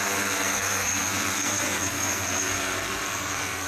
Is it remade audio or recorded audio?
remade